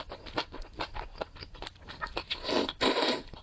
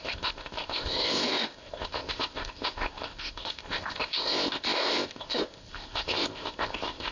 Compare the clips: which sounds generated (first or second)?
second